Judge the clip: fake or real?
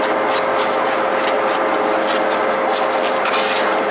real